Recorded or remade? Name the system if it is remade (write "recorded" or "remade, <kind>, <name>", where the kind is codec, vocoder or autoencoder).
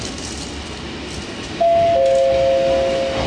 recorded